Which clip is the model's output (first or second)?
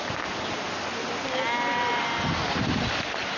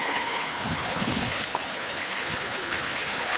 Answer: second